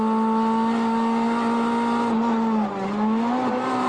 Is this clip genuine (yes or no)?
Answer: yes